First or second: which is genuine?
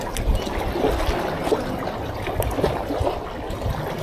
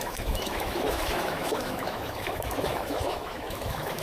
first